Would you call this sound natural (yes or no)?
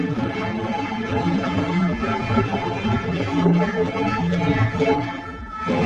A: no